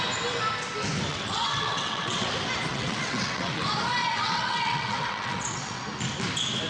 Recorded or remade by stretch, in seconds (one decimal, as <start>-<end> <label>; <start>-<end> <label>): 0.0-1.1 recorded; 1.1-2.3 remade; 2.3-2.7 recorded; 2.7-3.6 remade; 3.6-4.0 recorded; 4.0-5.8 remade; 5.8-6.7 recorded